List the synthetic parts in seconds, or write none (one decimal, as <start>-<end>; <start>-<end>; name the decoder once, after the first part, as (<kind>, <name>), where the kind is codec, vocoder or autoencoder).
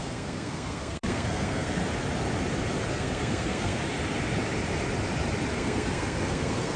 0.0-1.8 (codec, SNAC); 2.9-3.8; 5.5-6.8